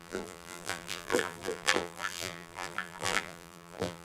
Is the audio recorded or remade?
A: remade